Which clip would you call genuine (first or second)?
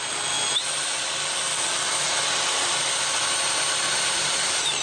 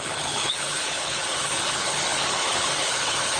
first